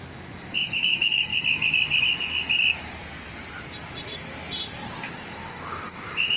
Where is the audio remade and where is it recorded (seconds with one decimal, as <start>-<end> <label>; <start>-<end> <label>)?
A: 0.0-1.3 remade; 1.3-5.1 recorded; 5.1-6.4 remade

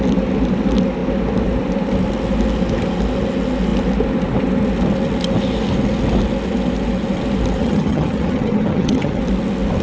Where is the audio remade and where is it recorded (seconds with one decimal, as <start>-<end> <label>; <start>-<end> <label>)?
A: 0.0-7.6 recorded; 7.6-9.2 remade; 9.2-9.8 recorded

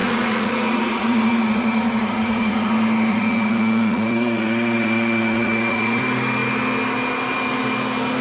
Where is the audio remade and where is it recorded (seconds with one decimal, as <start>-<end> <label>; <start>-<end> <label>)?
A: 0.0-2.7 remade; 2.7-3.1 recorded; 3.1-6.0 remade; 6.0-8.2 recorded